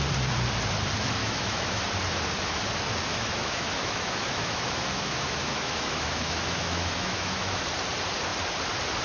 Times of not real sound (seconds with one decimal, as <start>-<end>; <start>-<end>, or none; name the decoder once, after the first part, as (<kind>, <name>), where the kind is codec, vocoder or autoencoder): 1.2-1.8 (autoencoder, DAC-VAE); 3.1-7.6